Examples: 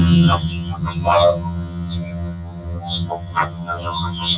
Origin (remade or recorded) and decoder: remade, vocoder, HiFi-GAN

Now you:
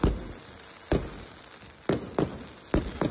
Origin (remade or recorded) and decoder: recorded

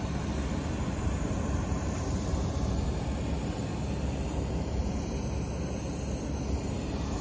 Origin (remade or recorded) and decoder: recorded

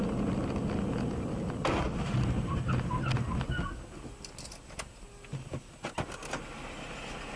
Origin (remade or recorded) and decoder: recorded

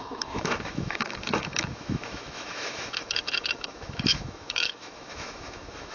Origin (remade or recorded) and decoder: remade, autoencoder, DAC-VAE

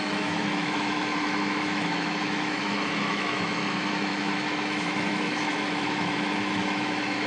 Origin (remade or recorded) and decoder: remade, autoencoder, DAC-VAE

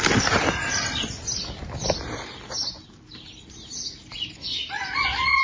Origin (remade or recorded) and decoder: recorded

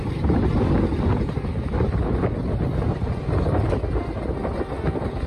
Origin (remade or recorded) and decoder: recorded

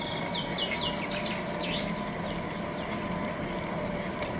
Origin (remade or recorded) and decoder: recorded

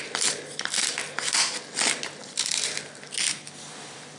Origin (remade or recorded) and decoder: recorded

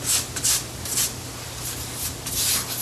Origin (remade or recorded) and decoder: recorded